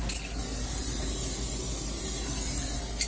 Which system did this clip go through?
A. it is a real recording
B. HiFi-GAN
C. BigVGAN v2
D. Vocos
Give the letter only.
A